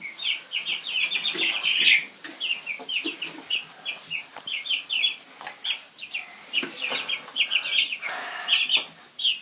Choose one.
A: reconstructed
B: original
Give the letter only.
B